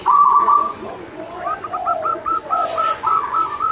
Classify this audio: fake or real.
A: fake